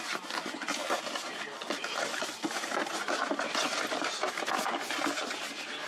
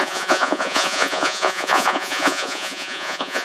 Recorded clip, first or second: first